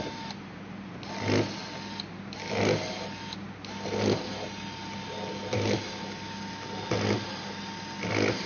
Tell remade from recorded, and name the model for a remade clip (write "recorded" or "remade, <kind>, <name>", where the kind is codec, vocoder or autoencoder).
recorded